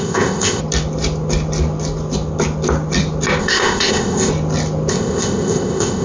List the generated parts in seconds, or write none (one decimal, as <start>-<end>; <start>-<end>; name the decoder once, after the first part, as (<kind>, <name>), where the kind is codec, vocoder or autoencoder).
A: 0.0-0.6 (codec, ZipCodec); 3.4-4.3; 4.9-6.0